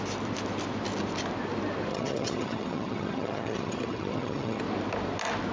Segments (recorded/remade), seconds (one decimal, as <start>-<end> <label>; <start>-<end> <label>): 0.0-1.9 recorded; 1.9-4.6 remade; 4.6-5.5 recorded